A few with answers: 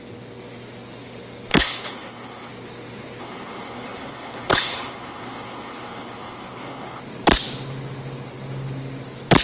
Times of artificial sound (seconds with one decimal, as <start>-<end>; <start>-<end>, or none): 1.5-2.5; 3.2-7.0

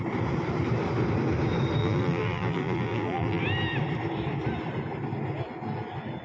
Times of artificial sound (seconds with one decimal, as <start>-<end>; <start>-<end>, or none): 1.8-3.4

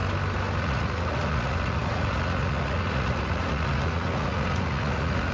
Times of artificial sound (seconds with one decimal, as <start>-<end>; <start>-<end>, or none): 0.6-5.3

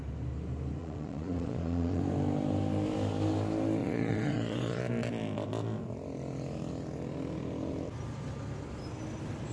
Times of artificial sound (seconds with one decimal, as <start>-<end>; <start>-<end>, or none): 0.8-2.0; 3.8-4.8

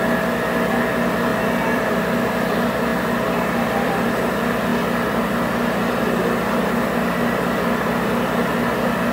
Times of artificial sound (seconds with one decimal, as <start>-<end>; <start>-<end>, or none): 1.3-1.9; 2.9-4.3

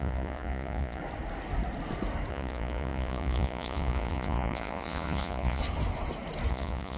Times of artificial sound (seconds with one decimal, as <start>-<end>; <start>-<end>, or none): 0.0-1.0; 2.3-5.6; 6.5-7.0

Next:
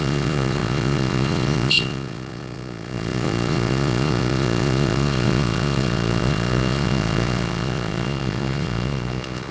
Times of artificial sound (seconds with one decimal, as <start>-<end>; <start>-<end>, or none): 0.0-9.5